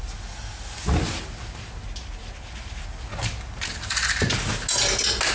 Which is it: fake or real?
real